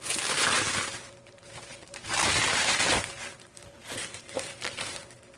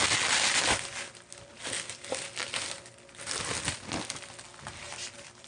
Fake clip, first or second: first